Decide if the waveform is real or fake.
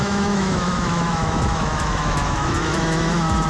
fake